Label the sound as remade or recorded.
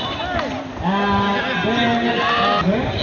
recorded